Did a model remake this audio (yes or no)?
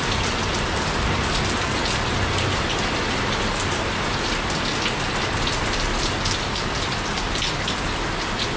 no